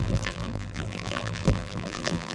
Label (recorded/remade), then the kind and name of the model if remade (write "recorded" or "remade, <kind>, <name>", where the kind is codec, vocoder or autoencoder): remade, vocoder, BigVGAN v2